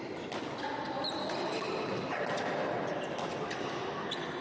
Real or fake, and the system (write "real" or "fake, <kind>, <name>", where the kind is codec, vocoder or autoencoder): real